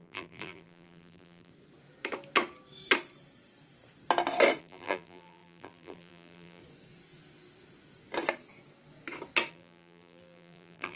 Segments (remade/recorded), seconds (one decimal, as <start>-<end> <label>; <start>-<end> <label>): 0.0-1.5 remade; 1.5-4.6 recorded; 4.6-6.6 remade; 6.6-9.5 recorded; 9.5-11.0 remade